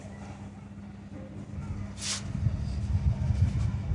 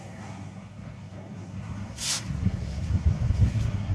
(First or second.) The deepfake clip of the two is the second